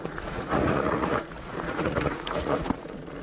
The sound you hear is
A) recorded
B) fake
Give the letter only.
B